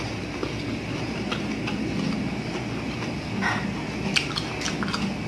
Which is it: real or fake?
real